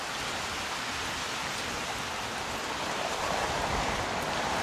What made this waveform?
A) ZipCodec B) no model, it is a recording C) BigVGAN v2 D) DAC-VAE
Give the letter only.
C